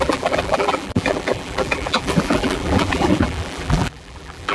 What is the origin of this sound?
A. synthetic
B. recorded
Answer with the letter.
A